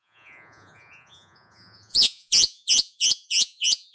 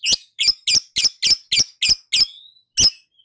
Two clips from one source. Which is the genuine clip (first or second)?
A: second